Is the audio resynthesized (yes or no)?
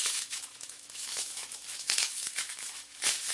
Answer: yes